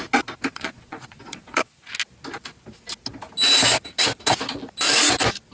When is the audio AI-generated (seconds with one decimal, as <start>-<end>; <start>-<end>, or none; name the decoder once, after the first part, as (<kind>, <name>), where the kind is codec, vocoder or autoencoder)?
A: 0.5-1.9 (vocoder, Vocos)